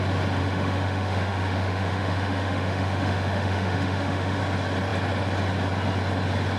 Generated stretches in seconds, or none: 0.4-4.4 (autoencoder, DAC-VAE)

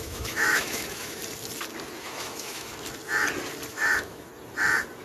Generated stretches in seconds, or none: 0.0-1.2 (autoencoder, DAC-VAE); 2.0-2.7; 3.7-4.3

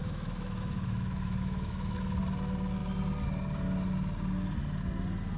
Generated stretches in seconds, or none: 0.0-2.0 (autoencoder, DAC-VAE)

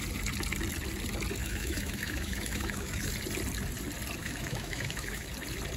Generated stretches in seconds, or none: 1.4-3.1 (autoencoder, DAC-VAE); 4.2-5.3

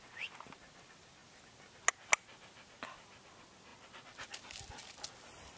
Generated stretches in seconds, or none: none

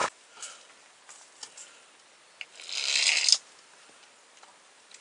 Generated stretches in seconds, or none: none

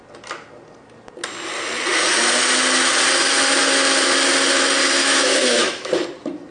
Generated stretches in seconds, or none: 5.0-5.9 (autoencoder, DAC-VAE)